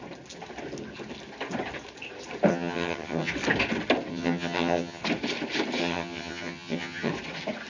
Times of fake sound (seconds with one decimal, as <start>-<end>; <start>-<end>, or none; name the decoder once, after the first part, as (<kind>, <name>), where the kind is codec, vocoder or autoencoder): 2.5-3.3 (vocoder, HiFi-GAN); 4.1-5.0; 5.8-7.1